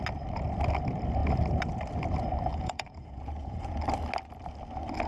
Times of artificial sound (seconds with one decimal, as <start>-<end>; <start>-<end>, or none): 2.5-3.8